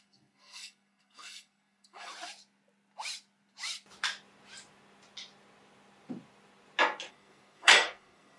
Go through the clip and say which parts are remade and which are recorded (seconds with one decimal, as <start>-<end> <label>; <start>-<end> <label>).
0.0-2.1 remade; 2.1-7.1 recorded; 7.1-8.4 remade